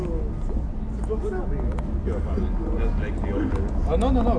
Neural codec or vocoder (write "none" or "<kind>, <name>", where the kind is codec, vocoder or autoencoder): none